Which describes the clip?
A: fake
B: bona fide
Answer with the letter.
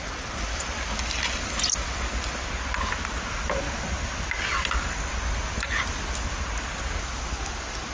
B